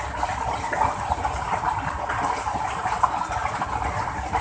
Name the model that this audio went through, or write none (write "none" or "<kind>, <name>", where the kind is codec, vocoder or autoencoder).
none